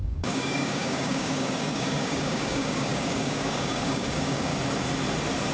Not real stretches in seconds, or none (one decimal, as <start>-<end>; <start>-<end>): 0.0-4.5